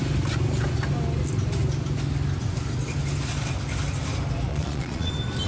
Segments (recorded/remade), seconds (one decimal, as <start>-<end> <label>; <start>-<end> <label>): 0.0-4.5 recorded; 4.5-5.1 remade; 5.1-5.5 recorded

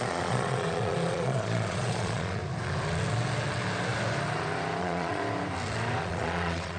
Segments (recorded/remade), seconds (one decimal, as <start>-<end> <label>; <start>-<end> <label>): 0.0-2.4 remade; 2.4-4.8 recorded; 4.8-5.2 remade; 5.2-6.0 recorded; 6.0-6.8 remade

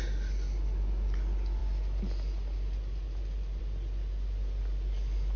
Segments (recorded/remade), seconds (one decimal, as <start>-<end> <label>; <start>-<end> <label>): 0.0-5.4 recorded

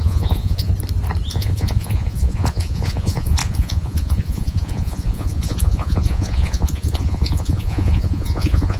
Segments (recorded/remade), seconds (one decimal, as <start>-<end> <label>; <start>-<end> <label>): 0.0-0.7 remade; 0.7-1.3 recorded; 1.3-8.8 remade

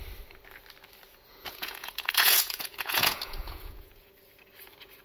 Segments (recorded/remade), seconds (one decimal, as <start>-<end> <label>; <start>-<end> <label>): 0.0-1.1 recorded; 1.1-4.1 remade; 4.1-5.0 recorded

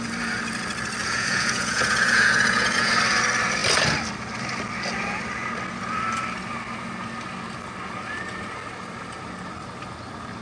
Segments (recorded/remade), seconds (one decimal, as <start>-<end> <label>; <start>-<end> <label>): 0.0-1.0 recorded; 1.0-2.9 remade; 2.9-10.4 recorded

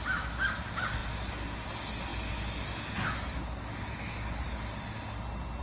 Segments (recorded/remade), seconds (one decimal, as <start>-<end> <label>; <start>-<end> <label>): 0.0-5.6 recorded

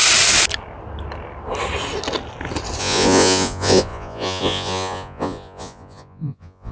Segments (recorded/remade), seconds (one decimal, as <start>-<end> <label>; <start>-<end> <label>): 0.0-2.8 recorded; 2.8-6.7 remade